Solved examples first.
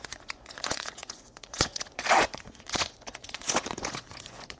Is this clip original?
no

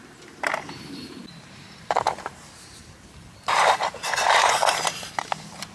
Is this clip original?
no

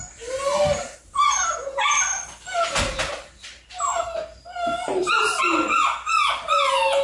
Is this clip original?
yes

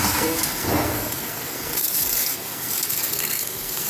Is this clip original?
no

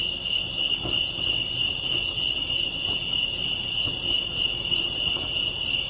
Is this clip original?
yes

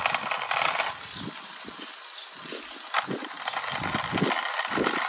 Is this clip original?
yes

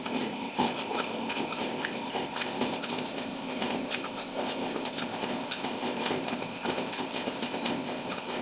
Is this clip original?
no